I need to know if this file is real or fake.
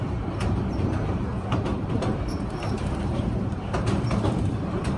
fake